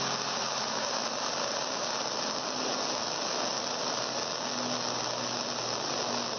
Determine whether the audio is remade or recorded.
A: recorded